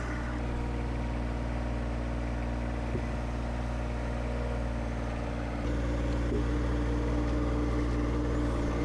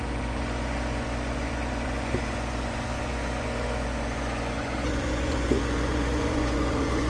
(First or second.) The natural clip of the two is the first